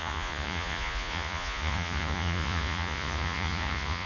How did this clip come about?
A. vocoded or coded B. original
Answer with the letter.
A